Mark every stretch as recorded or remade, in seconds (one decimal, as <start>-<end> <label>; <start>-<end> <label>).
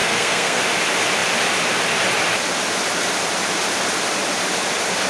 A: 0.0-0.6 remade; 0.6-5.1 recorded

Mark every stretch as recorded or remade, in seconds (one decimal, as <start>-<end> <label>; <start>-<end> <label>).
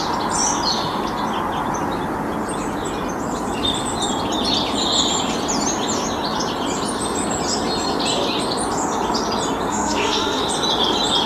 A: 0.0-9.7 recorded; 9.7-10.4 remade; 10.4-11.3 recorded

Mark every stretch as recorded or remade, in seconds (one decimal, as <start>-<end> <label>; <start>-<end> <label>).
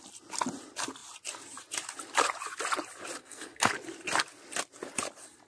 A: 0.0-3.2 recorded; 3.2-3.7 remade; 3.7-5.5 recorded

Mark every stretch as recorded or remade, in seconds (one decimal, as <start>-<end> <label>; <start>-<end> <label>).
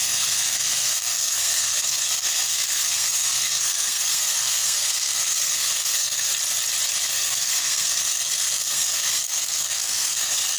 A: 0.0-6.3 remade; 6.3-7.0 recorded; 7.0-10.6 remade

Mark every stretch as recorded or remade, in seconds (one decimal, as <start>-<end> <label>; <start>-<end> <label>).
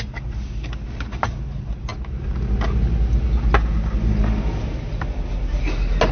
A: 0.0-6.1 recorded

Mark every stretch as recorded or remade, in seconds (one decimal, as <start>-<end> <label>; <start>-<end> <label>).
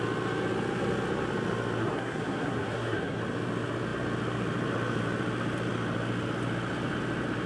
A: 0.0-1.8 recorded; 1.8-3.2 remade; 3.2-7.5 recorded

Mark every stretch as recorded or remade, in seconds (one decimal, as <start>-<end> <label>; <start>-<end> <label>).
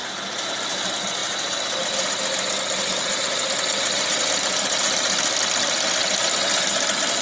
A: 0.0-7.2 recorded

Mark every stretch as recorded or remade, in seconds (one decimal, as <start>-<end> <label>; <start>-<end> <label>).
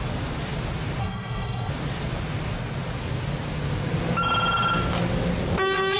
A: 0.0-1.0 recorded; 1.0-1.7 remade; 1.7-6.0 recorded